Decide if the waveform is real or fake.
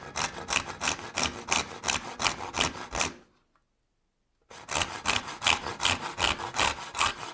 real